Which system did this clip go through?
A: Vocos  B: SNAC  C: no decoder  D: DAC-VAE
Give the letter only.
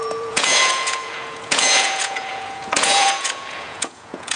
A